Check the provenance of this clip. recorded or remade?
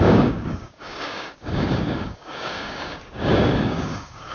remade